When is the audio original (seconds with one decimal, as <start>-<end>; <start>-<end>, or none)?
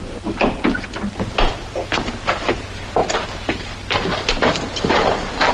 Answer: 0.0-5.5